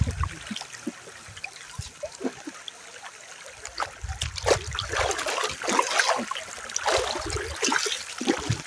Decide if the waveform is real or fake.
real